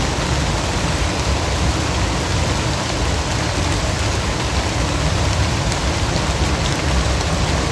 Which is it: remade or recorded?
recorded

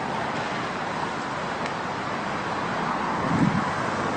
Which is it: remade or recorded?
recorded